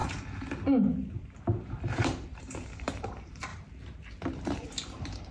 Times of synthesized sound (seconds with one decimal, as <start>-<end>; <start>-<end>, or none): 1.2-3.5; 4.6-5.3